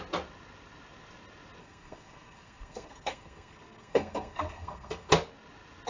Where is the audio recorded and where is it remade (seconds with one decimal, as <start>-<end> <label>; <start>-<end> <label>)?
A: 0.0-1.6 recorded; 1.6-5.1 remade; 5.1-5.9 recorded